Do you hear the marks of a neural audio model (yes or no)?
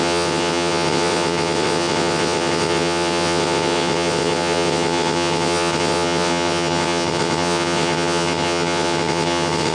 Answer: yes